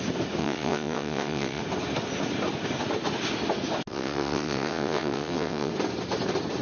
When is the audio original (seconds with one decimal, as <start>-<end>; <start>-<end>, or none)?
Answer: 0.0-0.4; 1.6-3.9; 5.7-6.6